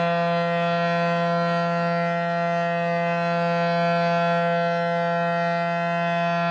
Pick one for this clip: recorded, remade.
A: recorded